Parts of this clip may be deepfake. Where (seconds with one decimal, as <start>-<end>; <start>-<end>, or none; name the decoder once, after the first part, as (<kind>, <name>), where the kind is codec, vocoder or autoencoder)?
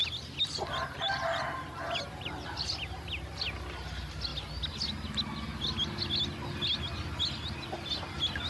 none